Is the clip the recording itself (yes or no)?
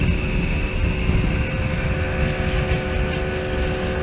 yes